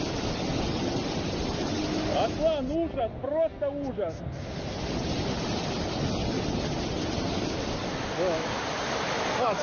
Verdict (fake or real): real